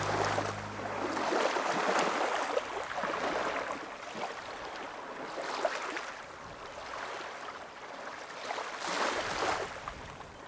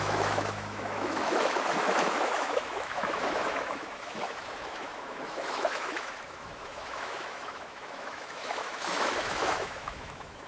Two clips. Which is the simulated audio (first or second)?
second